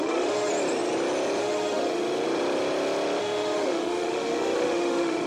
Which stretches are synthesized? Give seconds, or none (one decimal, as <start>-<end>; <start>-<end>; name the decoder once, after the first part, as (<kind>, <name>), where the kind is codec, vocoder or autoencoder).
0.0-0.5 (autoencoder, DAC-VAE); 1.4-2.0; 3.2-5.3